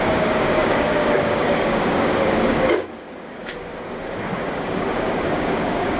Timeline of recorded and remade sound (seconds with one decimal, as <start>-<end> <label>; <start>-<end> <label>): 0.0-3.7 remade; 3.7-4.4 recorded; 4.4-6.0 remade